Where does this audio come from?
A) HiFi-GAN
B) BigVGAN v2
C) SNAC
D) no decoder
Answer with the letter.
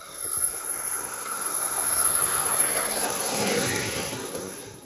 C